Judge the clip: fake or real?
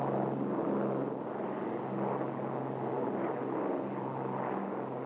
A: real